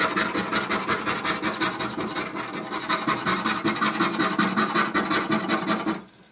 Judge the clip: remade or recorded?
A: recorded